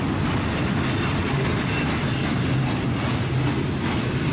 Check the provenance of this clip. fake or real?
real